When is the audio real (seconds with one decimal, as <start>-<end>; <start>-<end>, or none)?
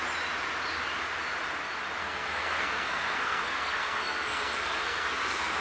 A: 0.0-2.0